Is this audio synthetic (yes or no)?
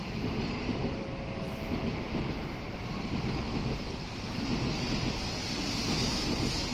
no